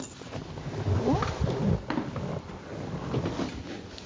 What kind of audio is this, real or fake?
real